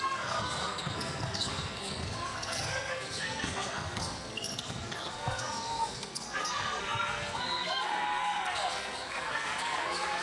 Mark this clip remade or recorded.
remade